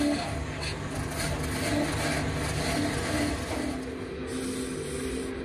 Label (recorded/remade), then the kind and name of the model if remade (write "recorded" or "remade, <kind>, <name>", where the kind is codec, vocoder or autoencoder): recorded